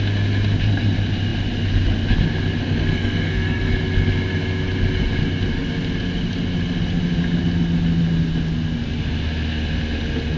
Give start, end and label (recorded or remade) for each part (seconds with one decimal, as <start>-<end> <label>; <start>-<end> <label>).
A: 0.0-2.6 recorded; 2.6-3.7 remade; 3.7-10.4 recorded